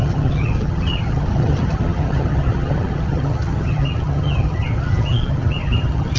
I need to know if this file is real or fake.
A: fake